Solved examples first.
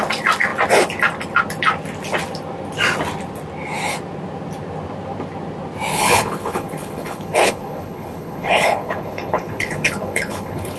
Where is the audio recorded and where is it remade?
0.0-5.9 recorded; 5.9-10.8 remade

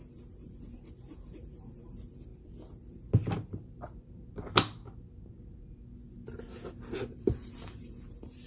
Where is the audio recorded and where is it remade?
0.0-2.3 remade; 2.3-7.1 recorded; 7.1-8.5 remade